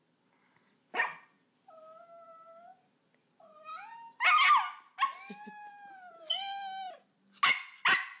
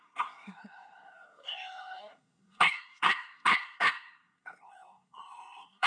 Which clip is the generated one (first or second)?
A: second